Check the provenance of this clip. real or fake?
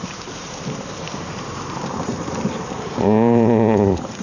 fake